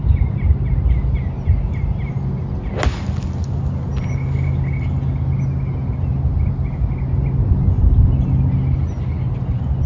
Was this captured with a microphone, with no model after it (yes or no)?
yes